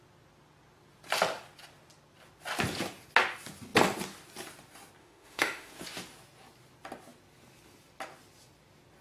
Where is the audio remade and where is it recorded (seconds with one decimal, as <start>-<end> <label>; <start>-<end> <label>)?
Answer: 0.0-5.0 recorded; 5.0-5.7 remade; 5.7-9.0 recorded